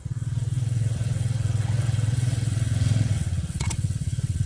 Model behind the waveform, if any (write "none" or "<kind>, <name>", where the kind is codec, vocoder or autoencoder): vocoder, WaveNeXt